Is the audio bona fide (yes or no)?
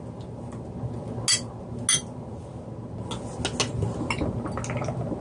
yes